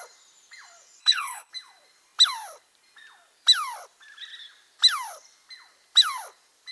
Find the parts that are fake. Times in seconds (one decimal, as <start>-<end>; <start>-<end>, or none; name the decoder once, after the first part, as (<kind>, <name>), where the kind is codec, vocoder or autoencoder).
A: 1.0-1.5 (codec, HILCodec)

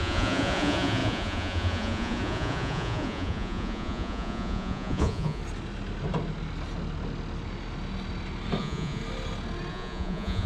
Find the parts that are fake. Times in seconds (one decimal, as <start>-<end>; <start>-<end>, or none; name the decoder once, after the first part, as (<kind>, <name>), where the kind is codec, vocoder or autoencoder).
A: 0.0-5.4 (vocoder, Vocos); 8.6-9.0; 9.7-10.5

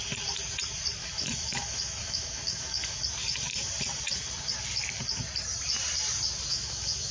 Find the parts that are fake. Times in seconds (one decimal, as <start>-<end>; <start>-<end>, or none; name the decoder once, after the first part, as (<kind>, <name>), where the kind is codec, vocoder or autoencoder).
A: 1.0-3.0 (autoencoder, DAC-VAE); 6.5-7.1

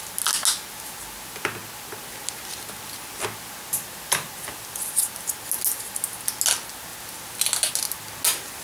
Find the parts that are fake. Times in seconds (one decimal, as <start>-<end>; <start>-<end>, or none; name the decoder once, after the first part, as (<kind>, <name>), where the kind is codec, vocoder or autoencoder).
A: none

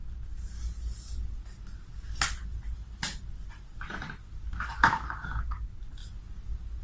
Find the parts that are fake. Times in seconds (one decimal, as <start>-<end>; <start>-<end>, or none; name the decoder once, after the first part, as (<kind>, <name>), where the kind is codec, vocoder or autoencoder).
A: none